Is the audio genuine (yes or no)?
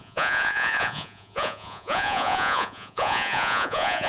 no